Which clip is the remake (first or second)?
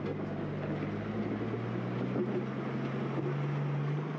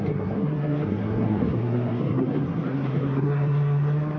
second